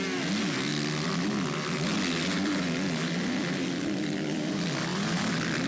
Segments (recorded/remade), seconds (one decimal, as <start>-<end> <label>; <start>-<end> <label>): 0.0-5.7 recorded

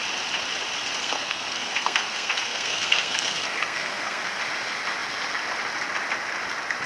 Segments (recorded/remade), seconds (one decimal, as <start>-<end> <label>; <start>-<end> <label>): 0.0-1.0 recorded; 1.0-4.4 remade; 4.4-6.9 recorded

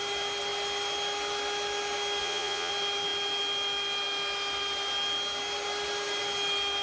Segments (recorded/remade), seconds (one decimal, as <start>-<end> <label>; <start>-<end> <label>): 0.0-2.2 recorded; 2.2-2.7 remade; 2.7-6.8 recorded

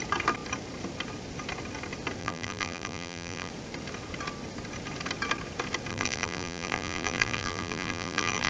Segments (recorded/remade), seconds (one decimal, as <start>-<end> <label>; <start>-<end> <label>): 0.0-2.2 recorded; 2.2-3.5 remade; 3.5-5.9 recorded; 5.9-8.5 remade

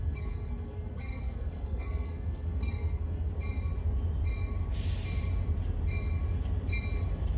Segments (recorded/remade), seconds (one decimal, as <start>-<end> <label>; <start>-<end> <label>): 0.0-3.3 remade; 3.3-7.4 recorded

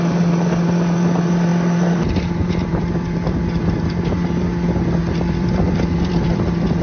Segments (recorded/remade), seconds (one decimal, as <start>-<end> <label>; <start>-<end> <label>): 0.0-1.5 recorded; 1.5-4.0 remade; 4.0-5.0 recorded; 5.0-6.8 remade

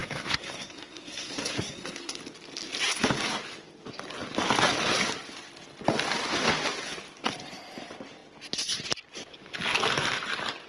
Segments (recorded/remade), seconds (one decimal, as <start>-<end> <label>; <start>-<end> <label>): 0.0-2.2 remade; 2.2-10.7 recorded

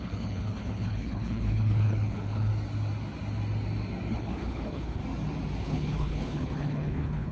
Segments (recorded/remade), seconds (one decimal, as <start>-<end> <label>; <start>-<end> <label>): 0.0-2.5 remade; 2.5-4.1 recorded; 4.1-5.0 remade; 5.0-5.6 recorded; 5.6-7.3 remade